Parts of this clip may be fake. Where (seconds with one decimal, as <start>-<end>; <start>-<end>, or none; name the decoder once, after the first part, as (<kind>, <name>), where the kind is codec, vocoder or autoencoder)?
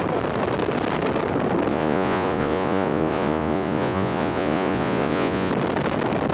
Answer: 1.7-5.5 (vocoder, Vocos)